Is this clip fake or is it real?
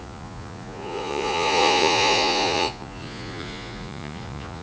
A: fake